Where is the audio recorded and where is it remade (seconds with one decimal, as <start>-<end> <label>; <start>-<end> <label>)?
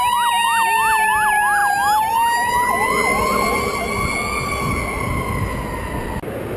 0.0-6.6 recorded